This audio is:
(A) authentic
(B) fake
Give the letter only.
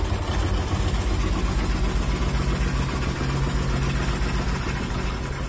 A